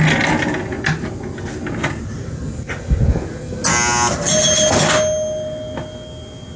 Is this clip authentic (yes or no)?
yes